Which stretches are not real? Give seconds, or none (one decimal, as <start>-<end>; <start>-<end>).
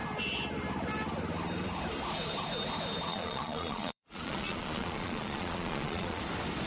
3.1-6.2